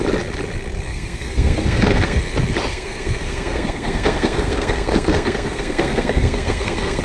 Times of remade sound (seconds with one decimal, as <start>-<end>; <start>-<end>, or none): 0.9-2.2; 2.7-7.0